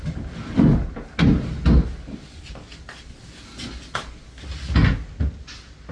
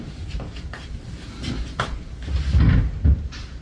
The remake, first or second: second